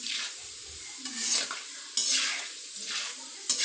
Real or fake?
fake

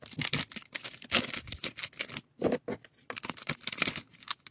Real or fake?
real